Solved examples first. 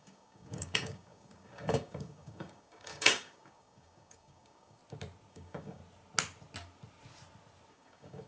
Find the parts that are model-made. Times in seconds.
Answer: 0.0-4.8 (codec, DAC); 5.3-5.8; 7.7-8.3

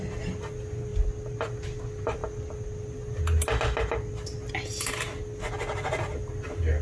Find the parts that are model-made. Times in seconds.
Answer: none

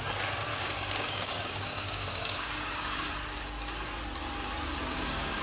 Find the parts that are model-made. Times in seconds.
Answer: 0.5-3.1 (codec, DAC); 4.8-5.4

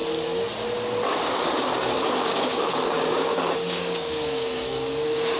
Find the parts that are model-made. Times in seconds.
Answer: 1.1-5.4 (codec, DAC)